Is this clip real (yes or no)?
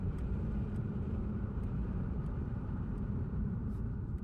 no